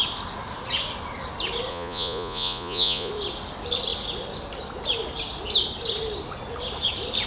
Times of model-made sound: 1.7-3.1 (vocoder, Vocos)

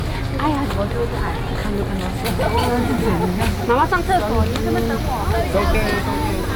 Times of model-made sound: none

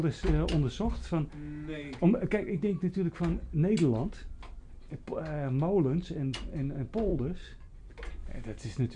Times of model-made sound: 7.1-7.8 (vocoder, Vocos)

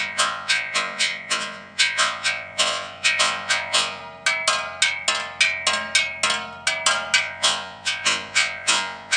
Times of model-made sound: 0.0-4.0 (vocoder, Vocos); 7.2-9.2

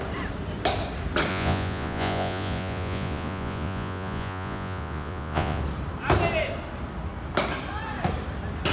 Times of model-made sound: 1.3-5.6 (vocoder, Vocos)

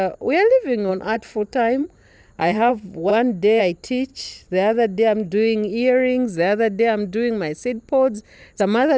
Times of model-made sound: 0.9-2.7 (vocoder, Vocos)